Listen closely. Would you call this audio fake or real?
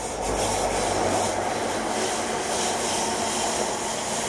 real